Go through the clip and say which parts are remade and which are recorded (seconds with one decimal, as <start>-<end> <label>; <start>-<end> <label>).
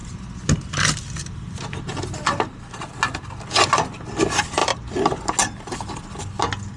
0.0-6.8 recorded